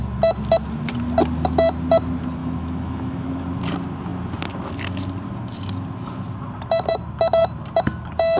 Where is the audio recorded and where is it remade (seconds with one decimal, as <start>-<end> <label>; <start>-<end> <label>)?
0.0-2.4 recorded; 2.4-3.6 remade; 3.6-8.4 recorded